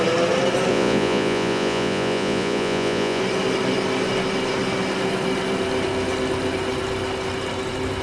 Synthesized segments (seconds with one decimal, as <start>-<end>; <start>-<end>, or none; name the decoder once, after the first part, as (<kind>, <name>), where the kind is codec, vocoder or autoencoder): 0.7-3.2 (vocoder, Vocos)